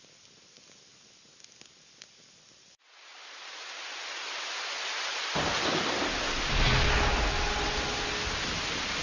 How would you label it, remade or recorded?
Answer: recorded